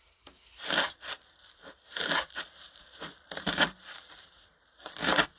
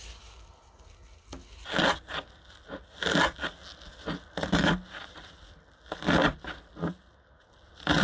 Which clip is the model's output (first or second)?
first